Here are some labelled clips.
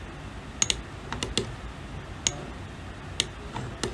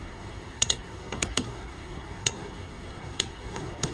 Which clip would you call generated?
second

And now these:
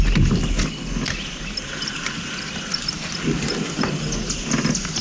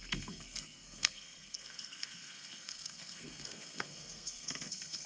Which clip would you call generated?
second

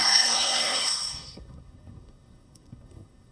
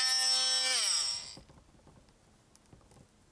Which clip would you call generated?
first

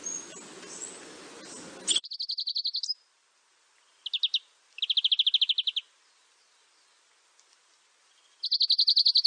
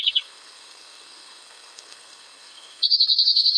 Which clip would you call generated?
second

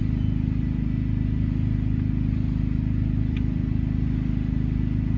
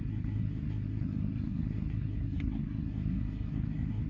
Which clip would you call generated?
second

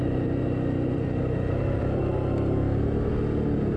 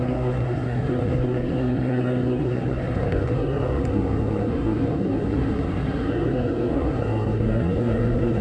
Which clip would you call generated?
second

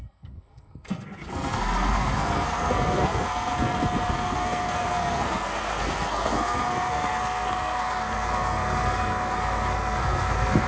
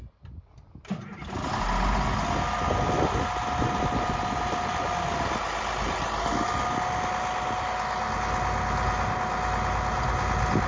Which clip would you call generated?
first